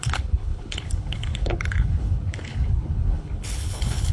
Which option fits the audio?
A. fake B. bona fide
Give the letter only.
A